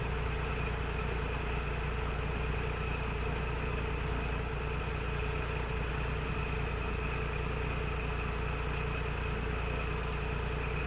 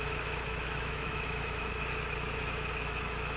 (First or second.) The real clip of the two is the first